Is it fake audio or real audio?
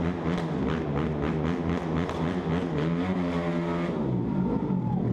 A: real